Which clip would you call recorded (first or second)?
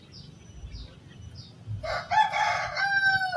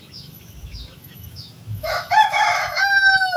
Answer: first